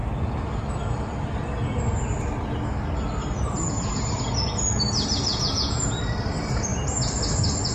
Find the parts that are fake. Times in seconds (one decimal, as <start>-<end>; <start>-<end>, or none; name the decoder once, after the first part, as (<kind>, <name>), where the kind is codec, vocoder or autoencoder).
5.3-5.9 (vocoder, Vocos)